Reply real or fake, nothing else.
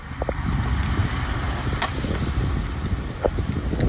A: real